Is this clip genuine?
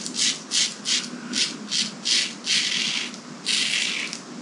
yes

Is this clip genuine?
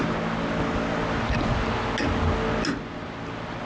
yes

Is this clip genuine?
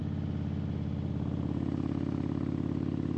yes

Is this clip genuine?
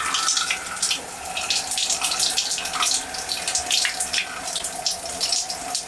yes